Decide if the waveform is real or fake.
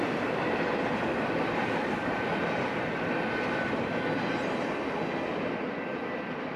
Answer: real